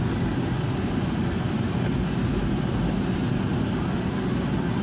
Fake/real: real